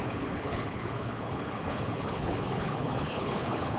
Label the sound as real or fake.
fake